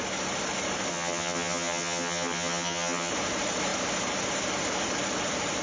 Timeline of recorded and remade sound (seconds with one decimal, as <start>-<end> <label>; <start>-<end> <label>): 0.0-0.9 recorded; 0.9-3.1 remade; 3.1-5.6 recorded